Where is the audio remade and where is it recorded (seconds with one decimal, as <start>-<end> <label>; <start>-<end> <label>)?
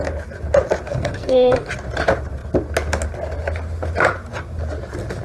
0.0-0.9 recorded; 0.9-1.7 remade; 1.7-5.2 recorded